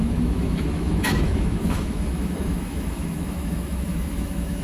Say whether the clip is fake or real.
fake